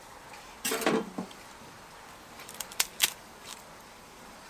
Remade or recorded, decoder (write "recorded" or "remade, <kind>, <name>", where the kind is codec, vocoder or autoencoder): remade, vocoder, BigVGAN v2